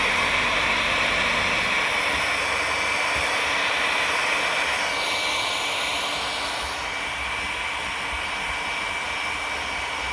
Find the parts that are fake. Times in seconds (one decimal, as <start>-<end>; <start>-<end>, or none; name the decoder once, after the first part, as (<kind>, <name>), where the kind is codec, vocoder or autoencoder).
0.0-1.4 (vocoder, BigVGAN v2)